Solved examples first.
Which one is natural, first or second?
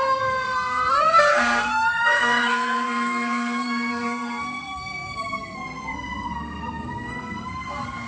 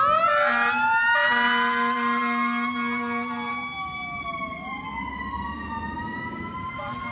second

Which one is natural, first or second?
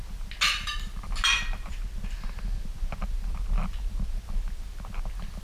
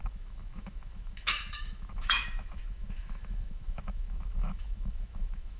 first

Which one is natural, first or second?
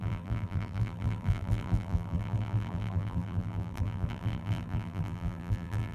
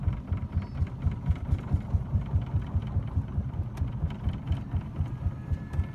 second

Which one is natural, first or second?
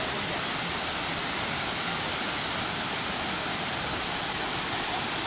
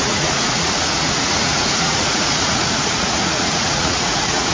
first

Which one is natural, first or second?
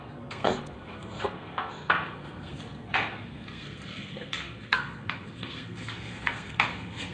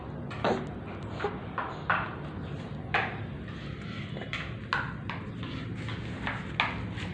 second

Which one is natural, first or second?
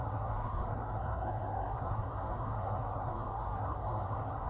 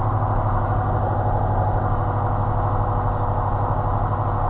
second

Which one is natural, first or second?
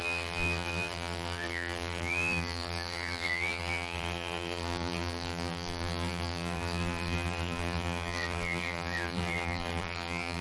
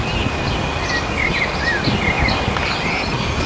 second